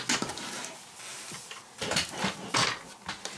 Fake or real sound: real